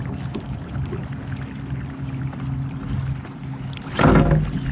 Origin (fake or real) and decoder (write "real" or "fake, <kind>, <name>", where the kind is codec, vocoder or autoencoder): real